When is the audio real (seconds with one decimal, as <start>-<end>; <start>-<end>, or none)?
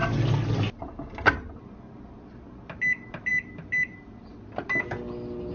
0.0-5.5